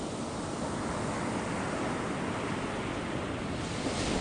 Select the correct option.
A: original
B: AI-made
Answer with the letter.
A